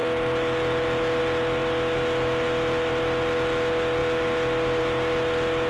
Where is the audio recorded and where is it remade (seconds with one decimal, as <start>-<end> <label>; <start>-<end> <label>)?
0.0-5.7 recorded